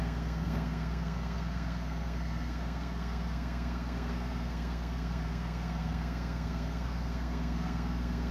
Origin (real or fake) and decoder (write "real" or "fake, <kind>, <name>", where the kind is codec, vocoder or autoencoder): fake, codec, SNAC